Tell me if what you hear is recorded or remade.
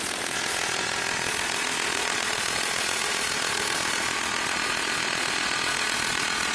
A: remade